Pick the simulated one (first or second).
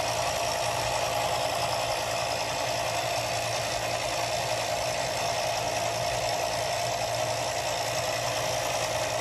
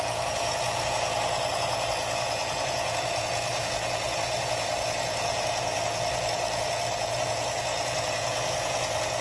second